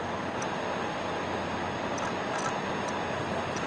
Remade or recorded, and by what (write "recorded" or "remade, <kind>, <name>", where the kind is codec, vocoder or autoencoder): recorded